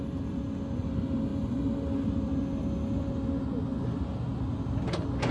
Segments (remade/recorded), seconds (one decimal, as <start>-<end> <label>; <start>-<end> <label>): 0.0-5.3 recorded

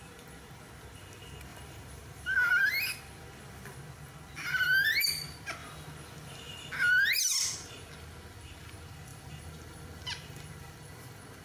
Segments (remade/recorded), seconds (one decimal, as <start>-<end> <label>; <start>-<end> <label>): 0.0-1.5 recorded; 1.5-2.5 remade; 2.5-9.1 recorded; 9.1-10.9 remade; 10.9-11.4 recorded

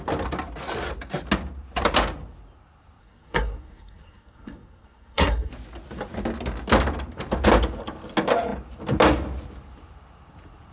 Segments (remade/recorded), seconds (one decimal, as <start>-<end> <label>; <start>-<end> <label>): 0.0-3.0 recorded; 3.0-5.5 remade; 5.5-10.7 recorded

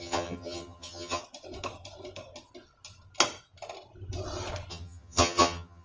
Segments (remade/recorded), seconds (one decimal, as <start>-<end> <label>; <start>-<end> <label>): 0.0-1.2 remade; 1.2-4.7 recorded; 4.7-5.8 remade

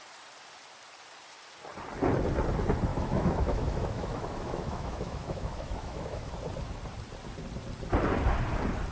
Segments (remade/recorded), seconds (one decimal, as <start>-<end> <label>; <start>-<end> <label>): 0.0-2.9 recorded; 2.9-6.3 remade; 6.3-8.9 recorded

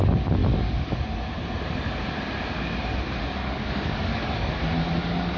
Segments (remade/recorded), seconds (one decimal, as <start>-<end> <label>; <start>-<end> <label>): 0.0-3.4 recorded; 3.4-4.5 remade; 4.5-5.4 recorded